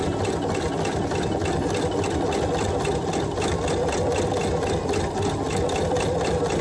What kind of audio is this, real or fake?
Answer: real